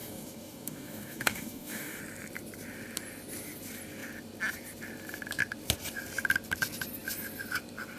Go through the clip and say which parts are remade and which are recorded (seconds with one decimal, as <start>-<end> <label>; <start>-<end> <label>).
0.0-2.0 remade; 2.0-8.0 recorded

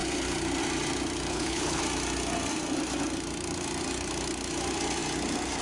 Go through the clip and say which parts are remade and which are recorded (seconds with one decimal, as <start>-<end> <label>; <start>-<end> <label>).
0.0-1.3 recorded; 1.3-1.8 remade; 1.8-5.6 recorded

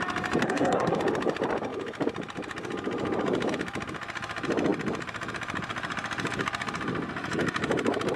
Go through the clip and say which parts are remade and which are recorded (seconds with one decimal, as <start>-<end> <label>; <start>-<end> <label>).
0.0-0.4 recorded; 0.4-1.0 remade; 1.0-8.2 recorded

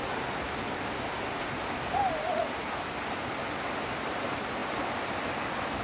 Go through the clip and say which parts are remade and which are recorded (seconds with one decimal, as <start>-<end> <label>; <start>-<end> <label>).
0.0-5.8 recorded